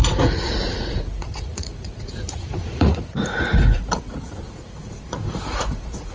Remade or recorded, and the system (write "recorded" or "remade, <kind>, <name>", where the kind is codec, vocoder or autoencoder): remade, vocoder, Vocos